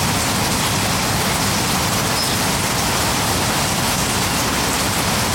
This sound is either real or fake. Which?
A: real